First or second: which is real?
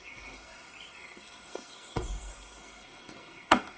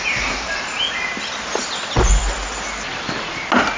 second